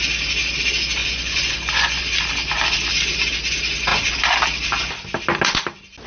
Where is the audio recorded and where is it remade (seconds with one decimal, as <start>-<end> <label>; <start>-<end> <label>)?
0.0-1.0 recorded; 1.0-2.1 remade; 2.1-6.1 recorded